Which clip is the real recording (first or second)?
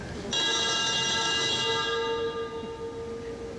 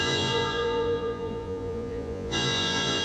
first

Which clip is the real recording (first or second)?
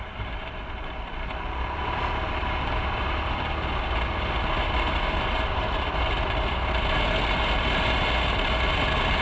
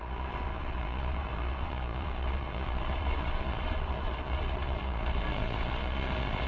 first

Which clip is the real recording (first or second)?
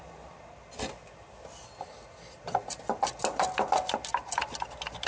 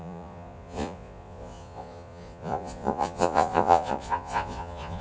first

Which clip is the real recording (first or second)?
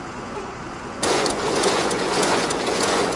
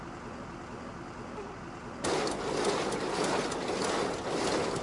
second